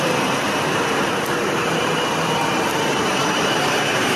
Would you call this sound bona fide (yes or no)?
no